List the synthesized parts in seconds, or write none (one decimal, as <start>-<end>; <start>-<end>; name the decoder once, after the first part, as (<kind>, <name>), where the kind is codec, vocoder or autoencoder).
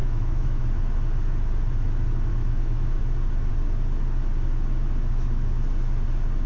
0.0-0.6 (autoencoder, DAC-VAE); 2.3-3.0